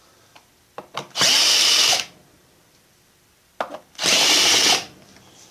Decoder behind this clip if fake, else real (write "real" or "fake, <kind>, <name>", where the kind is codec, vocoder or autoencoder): real